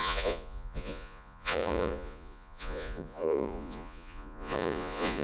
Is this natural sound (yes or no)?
no